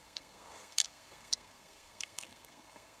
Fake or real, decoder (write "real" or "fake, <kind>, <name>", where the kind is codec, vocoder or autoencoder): fake, codec, SNAC